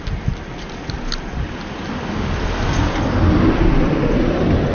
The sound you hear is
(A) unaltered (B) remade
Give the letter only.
A